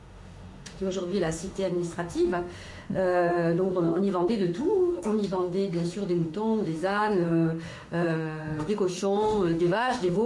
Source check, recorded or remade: remade